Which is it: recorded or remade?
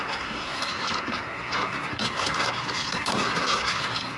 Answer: remade